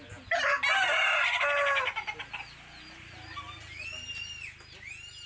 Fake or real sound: real